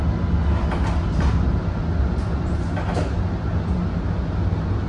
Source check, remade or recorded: recorded